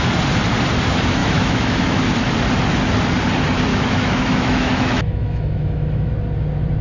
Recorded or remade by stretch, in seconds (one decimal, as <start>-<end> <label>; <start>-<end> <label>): 0.0-1.2 recorded; 1.2-2.0 remade; 2.0-3.7 recorded; 3.7-6.1 remade; 6.1-6.8 recorded